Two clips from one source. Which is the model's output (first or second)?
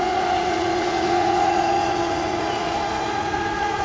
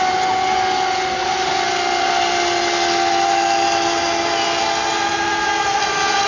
first